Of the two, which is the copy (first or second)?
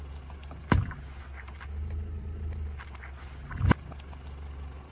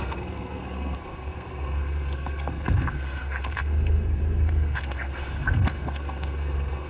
second